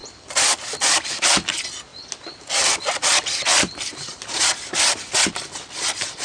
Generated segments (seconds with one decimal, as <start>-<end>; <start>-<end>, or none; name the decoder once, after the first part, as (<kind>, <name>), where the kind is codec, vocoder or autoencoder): none